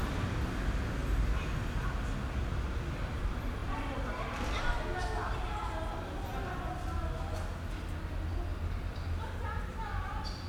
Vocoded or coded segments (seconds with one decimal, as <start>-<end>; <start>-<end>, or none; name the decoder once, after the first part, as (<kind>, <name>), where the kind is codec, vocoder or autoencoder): 1.0-1.5 (vocoder, BigVGAN v2); 3.6-4.8